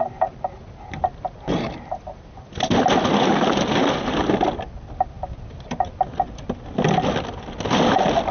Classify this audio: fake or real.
real